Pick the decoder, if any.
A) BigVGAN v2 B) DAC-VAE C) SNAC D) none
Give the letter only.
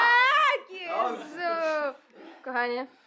D